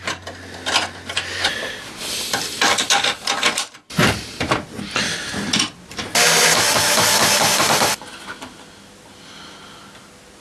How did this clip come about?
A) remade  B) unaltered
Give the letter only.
B